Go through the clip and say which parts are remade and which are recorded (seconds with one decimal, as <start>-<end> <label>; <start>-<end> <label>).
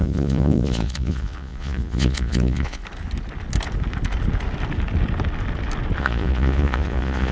0.0-2.8 remade; 2.8-6.0 recorded; 6.0-7.3 remade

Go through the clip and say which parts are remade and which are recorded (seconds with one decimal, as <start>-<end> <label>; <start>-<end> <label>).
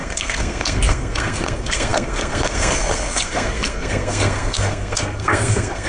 0.0-5.9 remade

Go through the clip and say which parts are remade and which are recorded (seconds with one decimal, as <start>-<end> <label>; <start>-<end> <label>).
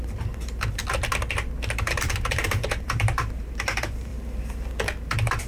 0.0-0.8 remade; 0.8-1.7 recorded; 1.7-4.1 remade; 4.1-4.8 recorded; 4.8-5.5 remade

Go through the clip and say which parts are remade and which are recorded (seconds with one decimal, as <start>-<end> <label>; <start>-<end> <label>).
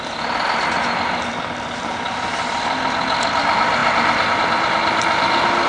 0.0-5.7 recorded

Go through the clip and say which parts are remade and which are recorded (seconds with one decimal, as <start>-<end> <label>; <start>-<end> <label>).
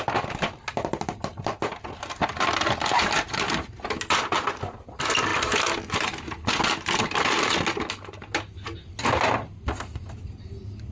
0.0-10.9 recorded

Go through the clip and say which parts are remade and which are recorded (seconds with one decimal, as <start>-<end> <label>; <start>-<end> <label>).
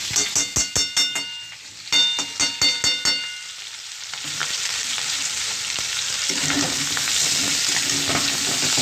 0.0-4.4 recorded; 4.4-7.7 remade; 7.7-8.8 recorded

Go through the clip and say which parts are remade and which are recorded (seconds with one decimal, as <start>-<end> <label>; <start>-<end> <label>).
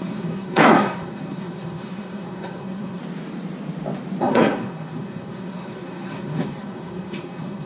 0.0-3.0 remade; 3.0-4.2 recorded; 4.2-7.7 remade